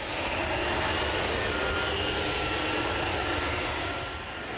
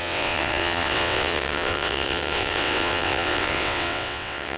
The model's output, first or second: second